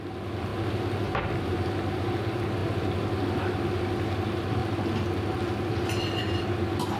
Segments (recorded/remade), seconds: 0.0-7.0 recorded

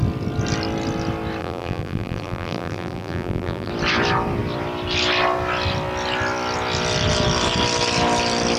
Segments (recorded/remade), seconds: 0.0-1.4 recorded; 1.4-3.7 remade; 3.7-8.6 recorded

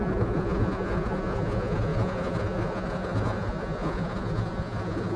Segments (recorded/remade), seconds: 0.0-5.2 remade

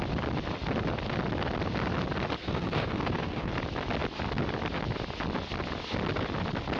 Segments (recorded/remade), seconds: 0.0-2.4 recorded; 2.4-3.5 remade; 3.5-6.8 recorded

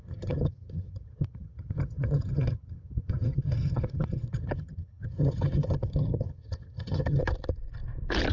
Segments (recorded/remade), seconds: 0.0-7.2 remade; 7.2-8.3 recorded